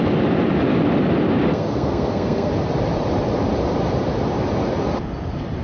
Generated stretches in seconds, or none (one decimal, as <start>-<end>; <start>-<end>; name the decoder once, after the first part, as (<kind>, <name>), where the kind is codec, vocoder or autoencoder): 1.5-2.5 (codec, SNAC)

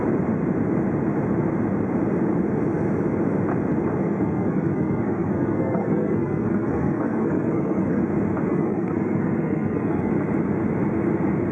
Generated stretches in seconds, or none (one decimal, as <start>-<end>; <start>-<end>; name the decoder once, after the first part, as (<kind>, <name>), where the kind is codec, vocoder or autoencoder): 4.0-8.0 (codec, SNAC); 8.5-10.1

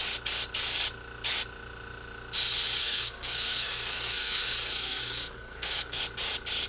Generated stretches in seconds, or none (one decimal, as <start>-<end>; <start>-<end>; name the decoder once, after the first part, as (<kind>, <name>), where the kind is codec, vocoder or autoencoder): 2.8-6.0 (codec, SNAC)

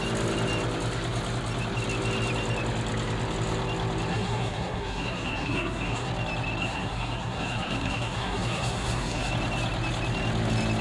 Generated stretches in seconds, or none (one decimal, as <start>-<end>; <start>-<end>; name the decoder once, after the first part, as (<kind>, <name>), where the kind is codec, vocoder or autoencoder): 4.1-6.1 (codec, SNAC); 6.6-9.3

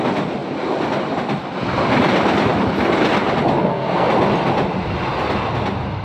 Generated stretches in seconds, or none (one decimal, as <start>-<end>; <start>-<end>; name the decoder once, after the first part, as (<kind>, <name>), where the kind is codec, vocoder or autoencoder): 3.6-4.1 (codec, SNAC)